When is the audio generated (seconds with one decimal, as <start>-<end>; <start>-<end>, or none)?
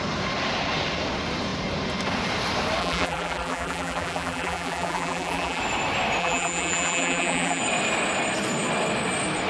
2.8-5.6; 6.2-7.6